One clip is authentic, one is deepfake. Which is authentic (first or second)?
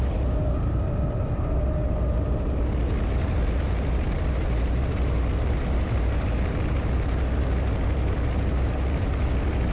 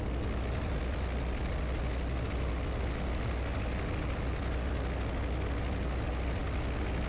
second